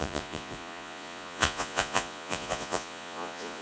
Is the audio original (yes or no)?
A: no